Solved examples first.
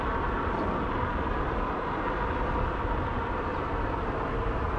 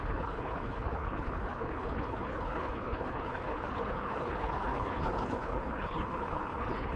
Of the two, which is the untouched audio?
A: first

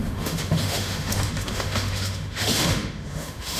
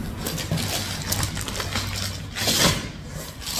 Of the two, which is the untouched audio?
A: second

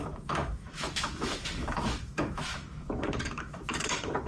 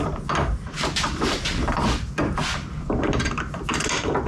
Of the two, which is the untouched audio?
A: second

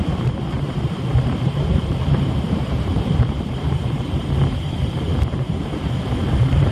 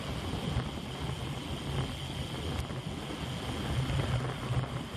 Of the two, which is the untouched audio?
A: second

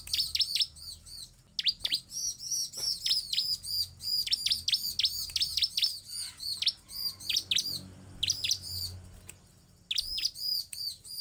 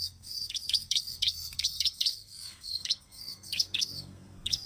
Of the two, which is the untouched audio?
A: first